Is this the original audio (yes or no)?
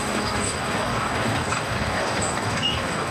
no